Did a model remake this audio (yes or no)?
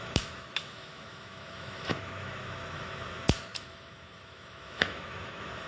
yes